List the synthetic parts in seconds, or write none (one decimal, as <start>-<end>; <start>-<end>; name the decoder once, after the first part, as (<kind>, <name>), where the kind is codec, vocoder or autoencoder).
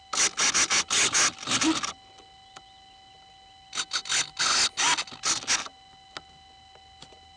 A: none